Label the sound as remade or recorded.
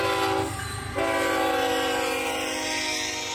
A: recorded